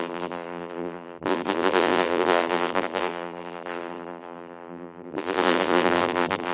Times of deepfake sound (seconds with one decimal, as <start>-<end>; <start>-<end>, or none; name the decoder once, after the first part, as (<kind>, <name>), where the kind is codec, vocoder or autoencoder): 0.0-6.5 (vocoder, BigVGAN v2)